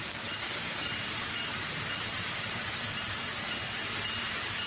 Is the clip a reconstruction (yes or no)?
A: yes